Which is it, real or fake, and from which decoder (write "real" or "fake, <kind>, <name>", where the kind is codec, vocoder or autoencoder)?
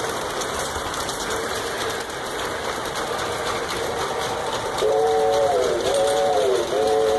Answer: fake, vocoder, BigVGAN v2